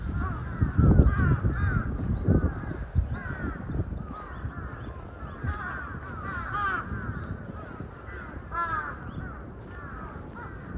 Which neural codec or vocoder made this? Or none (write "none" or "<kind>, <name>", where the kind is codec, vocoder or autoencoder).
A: none